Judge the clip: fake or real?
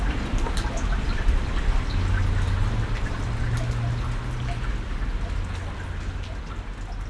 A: real